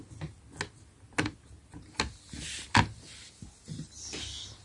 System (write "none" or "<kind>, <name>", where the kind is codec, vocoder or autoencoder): none